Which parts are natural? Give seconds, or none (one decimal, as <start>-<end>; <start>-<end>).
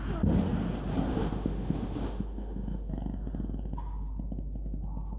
0.0-1.1; 2.9-5.2